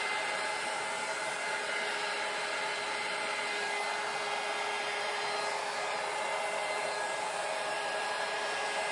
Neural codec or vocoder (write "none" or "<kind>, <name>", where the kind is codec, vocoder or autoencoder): none